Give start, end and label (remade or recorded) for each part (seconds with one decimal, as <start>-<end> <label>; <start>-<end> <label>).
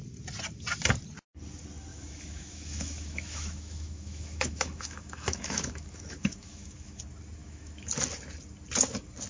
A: 0.0-1.9 recorded; 1.9-7.0 remade; 7.0-7.4 recorded; 7.4-7.9 remade; 7.9-9.3 recorded